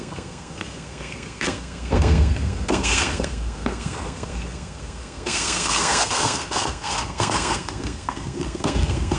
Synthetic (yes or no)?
yes